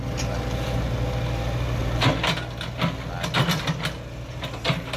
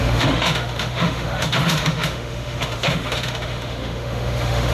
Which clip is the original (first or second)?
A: first